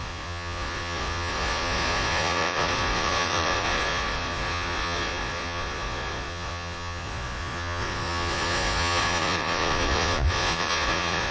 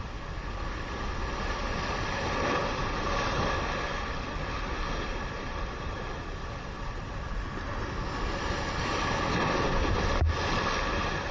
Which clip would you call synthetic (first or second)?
first